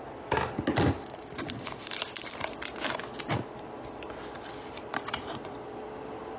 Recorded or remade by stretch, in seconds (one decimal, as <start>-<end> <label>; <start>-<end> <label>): 0.0-4.9 recorded; 4.9-5.6 remade; 5.6-6.4 recorded